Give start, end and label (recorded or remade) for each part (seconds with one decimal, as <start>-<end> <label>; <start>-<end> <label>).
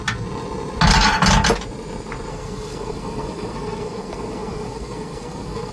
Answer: 0.0-2.3 recorded; 2.3-5.7 remade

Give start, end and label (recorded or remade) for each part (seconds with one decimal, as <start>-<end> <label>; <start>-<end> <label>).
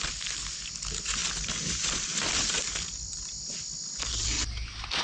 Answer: 0.0-5.0 recorded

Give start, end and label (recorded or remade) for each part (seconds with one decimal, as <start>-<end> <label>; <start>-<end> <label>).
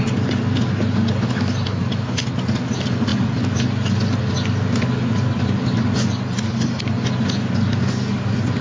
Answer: 0.0-8.6 recorded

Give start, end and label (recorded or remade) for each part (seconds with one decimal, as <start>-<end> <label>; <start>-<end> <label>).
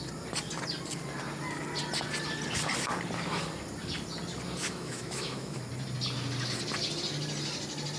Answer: 0.0-4.6 recorded; 4.6-5.6 remade; 5.6-8.0 recorded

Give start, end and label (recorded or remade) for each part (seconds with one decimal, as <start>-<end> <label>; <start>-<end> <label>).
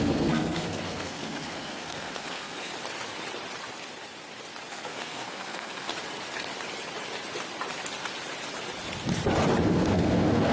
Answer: 0.0-2.7 remade; 2.7-4.7 recorded; 4.7-5.9 remade; 5.9-9.7 recorded; 9.7-10.5 remade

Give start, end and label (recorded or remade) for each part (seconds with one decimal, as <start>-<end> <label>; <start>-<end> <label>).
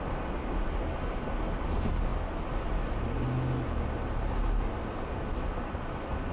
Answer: 0.0-6.3 recorded